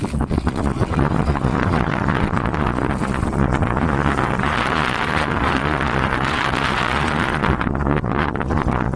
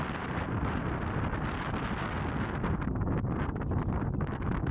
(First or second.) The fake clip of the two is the first